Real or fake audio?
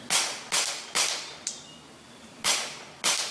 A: real